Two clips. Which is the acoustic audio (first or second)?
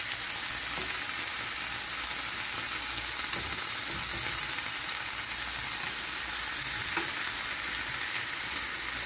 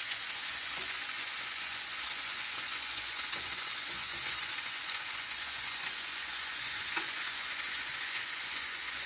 first